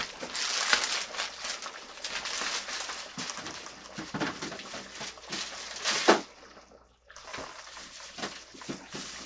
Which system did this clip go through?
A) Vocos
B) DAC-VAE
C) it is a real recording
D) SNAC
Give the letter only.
C